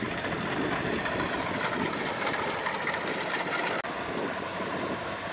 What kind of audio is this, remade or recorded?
recorded